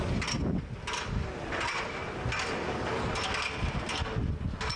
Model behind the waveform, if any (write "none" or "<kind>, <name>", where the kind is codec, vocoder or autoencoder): none